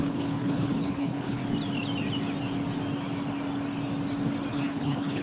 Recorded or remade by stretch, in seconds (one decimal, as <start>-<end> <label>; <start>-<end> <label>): 0.0-1.4 remade; 1.4-4.5 recorded; 4.5-5.2 remade